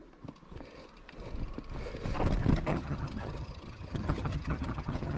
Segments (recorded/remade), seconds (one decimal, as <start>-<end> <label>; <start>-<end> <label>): 0.0-2.7 recorded; 2.7-5.2 remade